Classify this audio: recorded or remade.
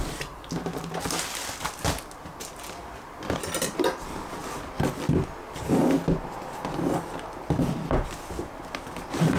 recorded